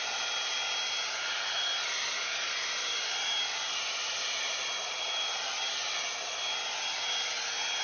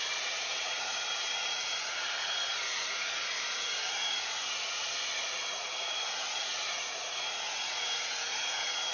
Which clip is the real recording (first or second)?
first